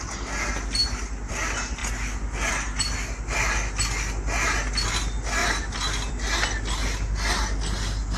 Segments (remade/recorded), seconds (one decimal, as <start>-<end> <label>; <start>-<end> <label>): 0.0-8.2 recorded

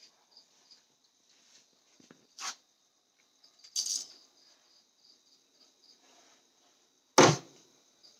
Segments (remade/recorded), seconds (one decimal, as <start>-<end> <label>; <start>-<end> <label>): 0.0-8.2 recorded

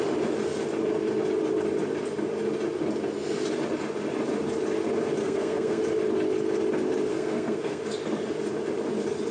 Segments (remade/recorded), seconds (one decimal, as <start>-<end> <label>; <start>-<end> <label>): 0.0-5.2 recorded; 5.2-5.8 remade; 5.8-7.1 recorded; 7.1-7.8 remade; 7.8-9.3 recorded

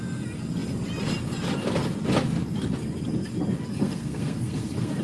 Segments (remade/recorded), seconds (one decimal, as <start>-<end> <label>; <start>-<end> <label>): 0.0-3.8 recorded; 3.8-5.0 remade

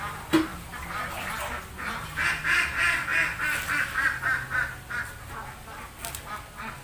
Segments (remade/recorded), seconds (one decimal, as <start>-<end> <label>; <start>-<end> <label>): 0.0-6.8 recorded

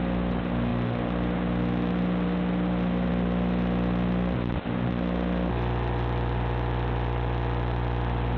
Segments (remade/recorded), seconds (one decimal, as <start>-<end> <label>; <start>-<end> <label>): 0.0-8.4 recorded